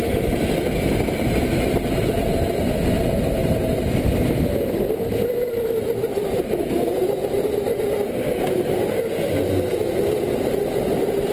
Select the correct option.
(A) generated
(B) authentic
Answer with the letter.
B